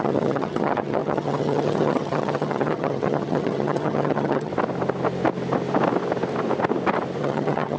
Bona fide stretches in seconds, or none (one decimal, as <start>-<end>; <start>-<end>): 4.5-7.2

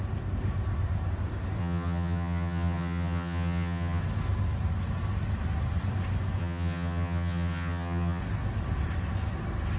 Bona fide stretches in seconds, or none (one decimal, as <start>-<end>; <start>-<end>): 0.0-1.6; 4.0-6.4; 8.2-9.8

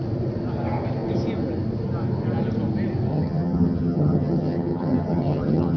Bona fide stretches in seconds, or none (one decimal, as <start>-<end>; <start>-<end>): 0.0-3.1

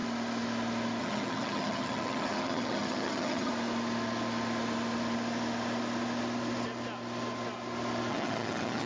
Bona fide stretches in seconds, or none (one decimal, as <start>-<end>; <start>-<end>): 0.0-1.0; 3.5-8.1

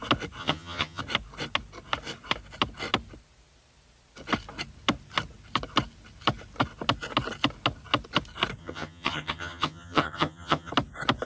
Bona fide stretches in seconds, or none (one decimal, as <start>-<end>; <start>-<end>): 0.0-0.4; 1.0-8.6; 10.7-11.3